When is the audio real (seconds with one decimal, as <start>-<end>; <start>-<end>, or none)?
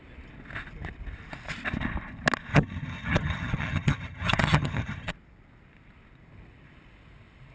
0.0-2.5; 5.1-7.5